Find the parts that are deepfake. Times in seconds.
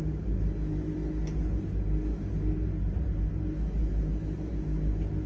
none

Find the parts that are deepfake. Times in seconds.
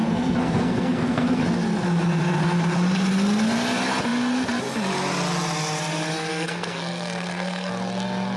0.0-1.4 (codec, SNAC); 6.3-7.7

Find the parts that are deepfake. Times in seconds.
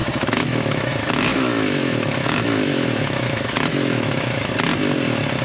0.0-0.9 (autoencoder, DAC-VAE); 1.3-4.5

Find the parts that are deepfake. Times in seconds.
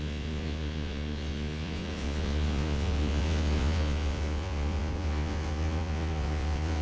0.0-6.8 (vocoder, Vocos)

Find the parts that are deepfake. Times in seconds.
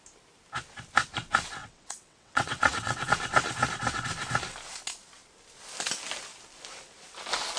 1.6-3.1 (vocoder, WaveNeXt)